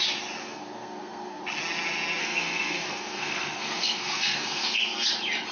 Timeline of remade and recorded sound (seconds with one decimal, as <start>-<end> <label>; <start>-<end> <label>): 0.0-0.4 recorded; 0.4-1.4 remade; 1.4-2.2 recorded; 2.2-5.1 remade; 5.1-5.5 recorded